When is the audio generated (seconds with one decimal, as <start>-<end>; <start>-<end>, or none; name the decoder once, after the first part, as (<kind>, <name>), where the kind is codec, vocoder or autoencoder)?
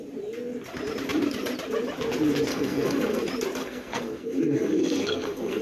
2.5-3.2 (codec, SNAC); 3.6-5.6